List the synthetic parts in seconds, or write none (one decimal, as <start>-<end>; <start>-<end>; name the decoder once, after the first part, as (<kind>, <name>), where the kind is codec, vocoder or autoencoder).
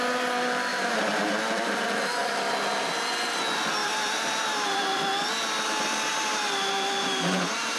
0.7-1.2 (vocoder, BigVGAN v2); 3.8-5.0; 6.1-7.8